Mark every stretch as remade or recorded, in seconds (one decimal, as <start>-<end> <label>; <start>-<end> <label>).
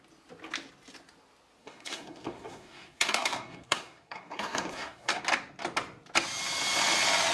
0.0-1.6 recorded; 1.6-5.2 remade; 5.2-7.3 recorded